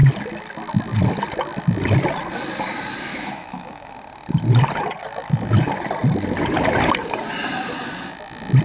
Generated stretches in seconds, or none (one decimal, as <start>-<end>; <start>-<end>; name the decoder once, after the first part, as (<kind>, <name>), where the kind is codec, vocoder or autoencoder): 3.1-3.9 (autoencoder, DAC-VAE)